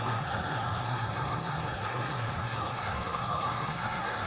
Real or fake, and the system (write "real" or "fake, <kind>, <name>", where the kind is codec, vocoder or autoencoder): fake, codec, SNAC